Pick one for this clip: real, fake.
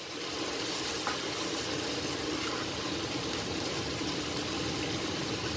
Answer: fake